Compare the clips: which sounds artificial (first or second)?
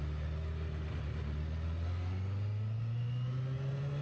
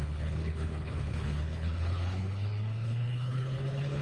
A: second